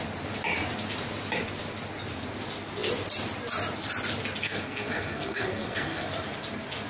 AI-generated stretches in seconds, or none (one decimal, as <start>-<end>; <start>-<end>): 4.4-6.1